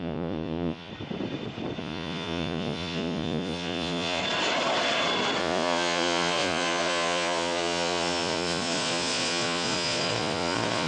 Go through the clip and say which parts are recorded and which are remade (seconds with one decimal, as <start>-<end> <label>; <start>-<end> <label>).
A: 0.0-0.9 remade; 0.9-1.8 recorded; 1.8-4.2 remade; 4.2-5.4 recorded; 5.4-10.9 remade